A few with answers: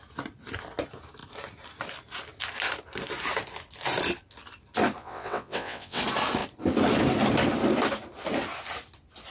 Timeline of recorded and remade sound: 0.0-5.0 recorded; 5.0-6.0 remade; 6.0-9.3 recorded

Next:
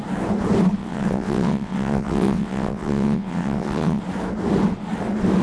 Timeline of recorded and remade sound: 0.0-0.8 recorded; 0.8-4.0 remade; 4.0-5.4 recorded

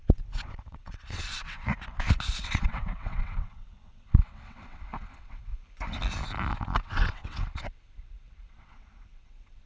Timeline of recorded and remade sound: 0.0-1.7 remade; 1.7-2.4 recorded; 2.4-5.5 remade; 5.5-6.5 recorded; 6.5-9.7 remade

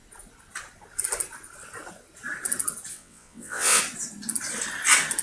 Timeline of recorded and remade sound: 0.0-2.9 recorded; 2.9-3.8 remade; 3.8-5.2 recorded

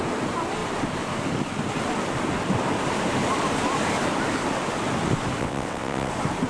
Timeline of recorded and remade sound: 0.0-5.4 recorded; 5.4-6.1 remade; 6.1-6.5 recorded

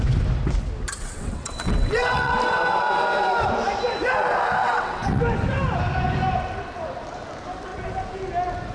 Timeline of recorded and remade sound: 0.0-1.0 recorded; 1.0-2.4 remade; 2.4-4.6 recorded; 4.6-5.2 remade; 5.2-8.7 recorded